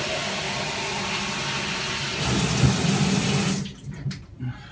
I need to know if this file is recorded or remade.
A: recorded